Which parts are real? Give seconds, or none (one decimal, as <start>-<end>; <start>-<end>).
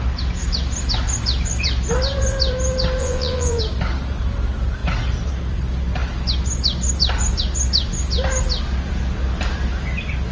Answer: 0.0-3.0; 3.6-10.3